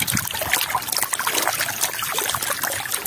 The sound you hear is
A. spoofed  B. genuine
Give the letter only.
B